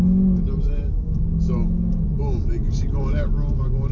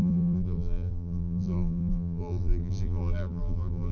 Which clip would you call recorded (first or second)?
first